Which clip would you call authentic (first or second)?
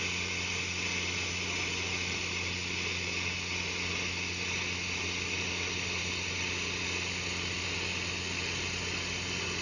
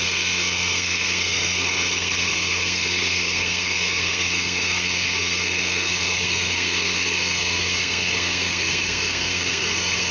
first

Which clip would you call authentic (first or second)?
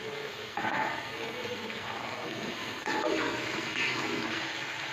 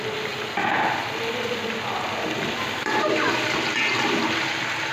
second